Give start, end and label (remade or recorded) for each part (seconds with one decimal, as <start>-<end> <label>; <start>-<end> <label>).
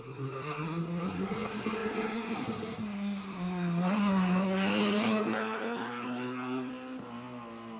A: 0.0-6.7 remade; 6.7-7.8 recorded